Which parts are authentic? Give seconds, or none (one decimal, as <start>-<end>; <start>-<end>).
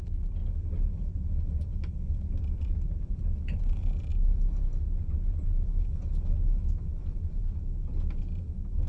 0.0-8.9